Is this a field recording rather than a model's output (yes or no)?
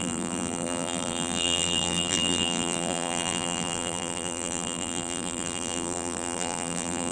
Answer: no